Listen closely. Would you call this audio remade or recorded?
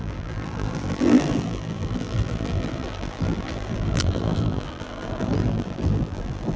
remade